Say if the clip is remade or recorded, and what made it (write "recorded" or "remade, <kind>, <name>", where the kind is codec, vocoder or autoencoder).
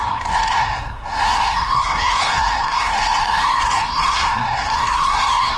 remade, codec, SNAC